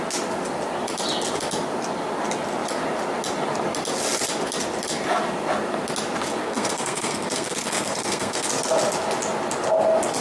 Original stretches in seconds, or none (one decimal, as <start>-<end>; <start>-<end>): 0.0-6.4; 8.5-10.2